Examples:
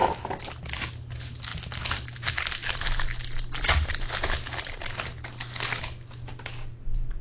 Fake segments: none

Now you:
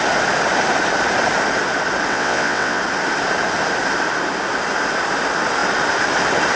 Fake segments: 2.1-2.8